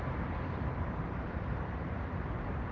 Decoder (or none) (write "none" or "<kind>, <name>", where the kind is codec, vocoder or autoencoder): vocoder, BigVGAN v2